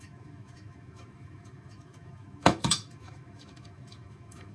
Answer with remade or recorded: remade